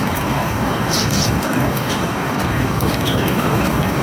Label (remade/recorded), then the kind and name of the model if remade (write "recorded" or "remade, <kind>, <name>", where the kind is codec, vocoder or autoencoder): remade, codec, DAC